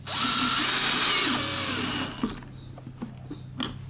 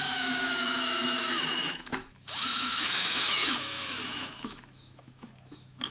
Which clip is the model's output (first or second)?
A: second